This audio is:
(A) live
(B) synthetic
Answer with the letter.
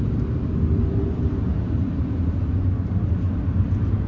A